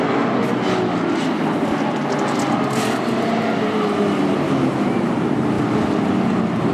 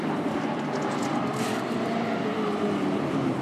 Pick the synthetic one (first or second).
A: second